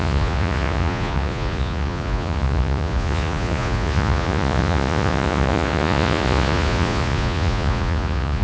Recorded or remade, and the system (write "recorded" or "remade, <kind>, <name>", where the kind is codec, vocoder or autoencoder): remade, vocoder, Vocos